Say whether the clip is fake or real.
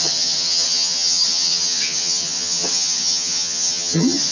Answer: fake